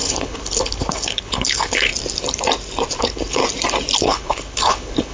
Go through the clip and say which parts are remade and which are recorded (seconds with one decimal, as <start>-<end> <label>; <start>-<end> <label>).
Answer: 0.0-1.9 remade; 1.9-3.0 recorded; 3.0-3.4 remade; 3.4-4.0 recorded; 4.0-5.1 remade